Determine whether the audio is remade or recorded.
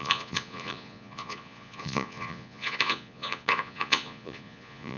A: remade